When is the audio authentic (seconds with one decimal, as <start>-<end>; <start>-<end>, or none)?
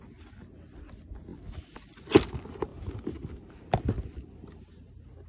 0.0-1.3; 2.0-5.3